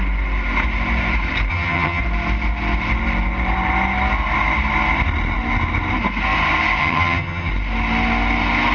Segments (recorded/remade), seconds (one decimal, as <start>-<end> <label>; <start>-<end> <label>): 0.0-1.5 recorded; 1.5-2.0 remade; 2.0-6.8 recorded; 6.8-7.5 remade; 7.5-8.7 recorded